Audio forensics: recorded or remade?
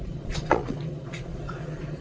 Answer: remade